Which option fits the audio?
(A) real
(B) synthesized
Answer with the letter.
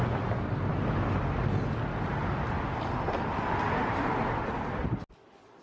A